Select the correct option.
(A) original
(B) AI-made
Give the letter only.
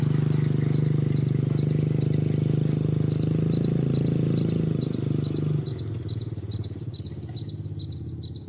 A